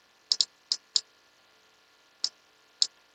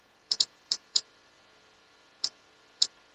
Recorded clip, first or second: first